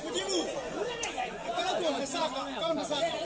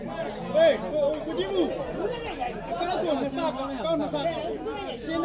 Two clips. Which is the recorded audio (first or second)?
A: second